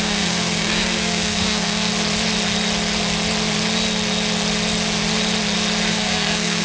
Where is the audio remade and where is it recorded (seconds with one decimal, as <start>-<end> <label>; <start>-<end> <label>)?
0.0-1.9 remade; 1.9-5.9 recorded; 5.9-6.6 remade